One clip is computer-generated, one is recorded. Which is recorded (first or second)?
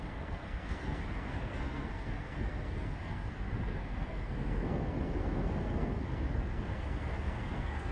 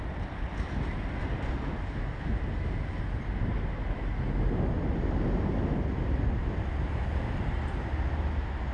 second